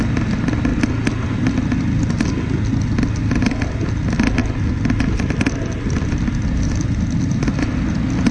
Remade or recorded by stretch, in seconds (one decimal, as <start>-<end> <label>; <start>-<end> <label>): 0.0-8.3 recorded